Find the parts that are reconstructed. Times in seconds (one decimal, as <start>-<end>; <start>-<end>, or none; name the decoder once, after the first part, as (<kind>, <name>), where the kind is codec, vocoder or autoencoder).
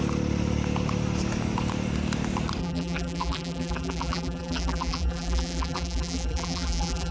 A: 2.6-7.1 (vocoder, BigVGAN v2)